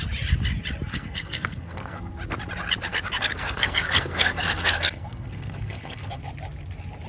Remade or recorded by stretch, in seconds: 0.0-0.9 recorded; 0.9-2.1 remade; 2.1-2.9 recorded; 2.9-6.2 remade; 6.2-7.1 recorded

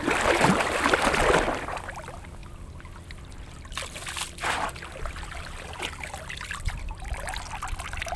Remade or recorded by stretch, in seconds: 0.0-8.2 recorded